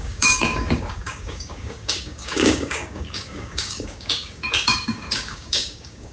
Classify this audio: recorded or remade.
remade